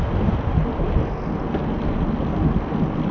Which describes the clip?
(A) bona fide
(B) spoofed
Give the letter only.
A